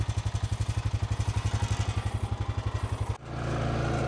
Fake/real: real